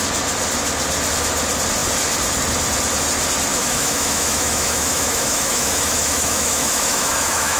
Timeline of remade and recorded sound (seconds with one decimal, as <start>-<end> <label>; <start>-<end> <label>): 0.0-3.5 recorded; 3.5-7.6 remade

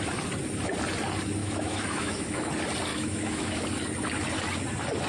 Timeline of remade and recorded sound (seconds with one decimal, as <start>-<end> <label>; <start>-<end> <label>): 0.0-1.4 recorded; 1.4-2.5 remade; 2.5-2.9 recorded; 2.9-3.6 remade; 3.6-5.1 recorded

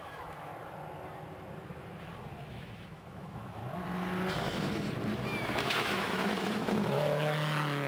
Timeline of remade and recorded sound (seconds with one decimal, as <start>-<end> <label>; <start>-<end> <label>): 0.0-0.5 remade; 0.5-2.5 recorded; 2.5-3.6 remade; 3.6-5.4 recorded; 5.4-7.9 remade

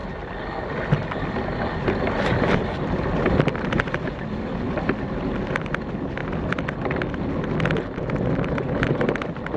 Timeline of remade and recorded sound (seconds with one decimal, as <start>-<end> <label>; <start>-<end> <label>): 0.0-9.6 recorded

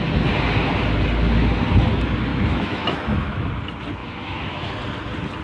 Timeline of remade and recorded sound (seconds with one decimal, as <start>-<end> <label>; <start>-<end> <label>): 0.0-2.3 recorded; 2.3-3.5 remade; 3.5-4.0 recorded; 4.0-4.7 remade; 4.7-5.4 recorded

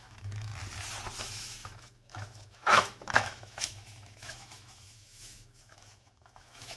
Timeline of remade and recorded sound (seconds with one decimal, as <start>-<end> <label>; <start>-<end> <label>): 0.0-0.5 remade; 0.5-1.2 recorded; 1.2-6.8 remade